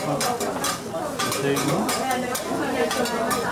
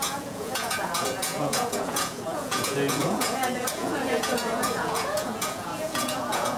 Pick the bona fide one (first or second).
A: first